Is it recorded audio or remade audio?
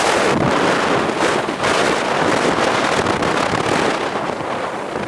recorded